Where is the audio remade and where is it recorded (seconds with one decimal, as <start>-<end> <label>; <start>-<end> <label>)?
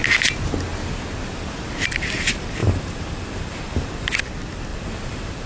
0.0-2.6 recorded; 2.6-4.2 remade; 4.2-4.7 recorded; 4.7-5.5 remade